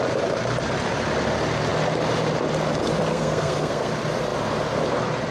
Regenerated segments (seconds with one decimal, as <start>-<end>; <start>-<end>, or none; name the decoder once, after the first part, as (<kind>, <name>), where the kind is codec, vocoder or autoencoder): 3.1-3.9 (codec, SNAC)